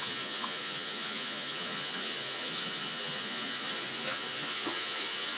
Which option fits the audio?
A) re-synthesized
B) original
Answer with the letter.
A